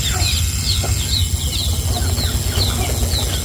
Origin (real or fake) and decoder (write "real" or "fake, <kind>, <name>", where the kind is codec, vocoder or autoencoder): real